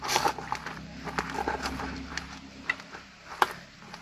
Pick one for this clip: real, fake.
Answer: real